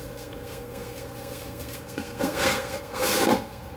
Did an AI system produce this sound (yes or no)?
yes